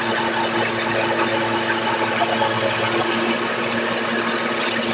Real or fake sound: real